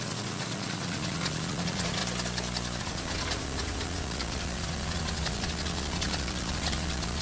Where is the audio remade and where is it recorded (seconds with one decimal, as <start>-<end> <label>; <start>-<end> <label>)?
0.0-2.0 remade; 2.0-2.8 recorded; 2.8-7.2 remade